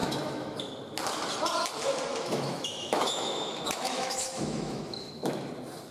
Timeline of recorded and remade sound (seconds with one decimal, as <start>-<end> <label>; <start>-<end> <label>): 0.0-0.7 remade; 0.7-2.1 recorded; 2.1-5.5 remade; 5.5-5.9 recorded